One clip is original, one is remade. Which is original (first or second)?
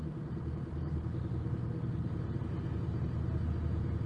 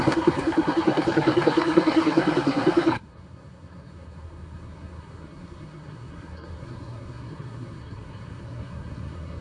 first